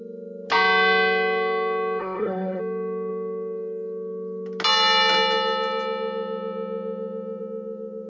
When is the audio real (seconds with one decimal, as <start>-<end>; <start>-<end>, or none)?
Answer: 0.0-2.0; 2.6-8.1